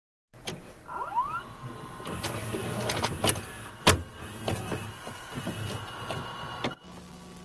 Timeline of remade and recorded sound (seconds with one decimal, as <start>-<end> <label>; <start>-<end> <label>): 0.0-7.4 recorded